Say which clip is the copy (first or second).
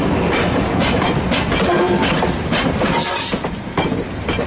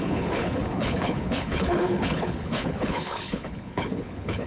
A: second